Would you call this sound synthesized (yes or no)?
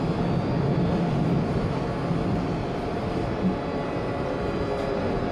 no